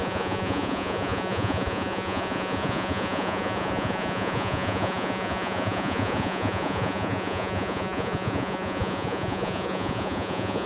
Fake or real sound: fake